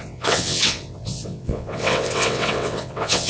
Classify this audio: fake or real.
fake